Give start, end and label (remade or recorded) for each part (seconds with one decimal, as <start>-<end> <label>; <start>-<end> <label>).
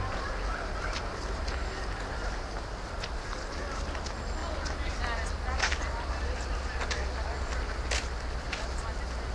0.0-9.3 recorded